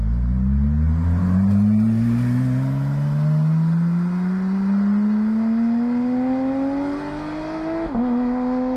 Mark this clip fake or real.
real